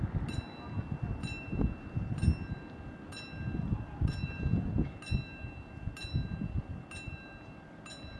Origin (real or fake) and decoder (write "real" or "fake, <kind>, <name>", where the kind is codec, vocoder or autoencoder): real